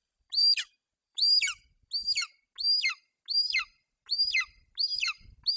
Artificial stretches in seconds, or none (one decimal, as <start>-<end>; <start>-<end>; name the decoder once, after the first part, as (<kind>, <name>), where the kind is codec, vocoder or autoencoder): 0.0-0.6 (vocoder, BigVGAN v2); 1.0-1.9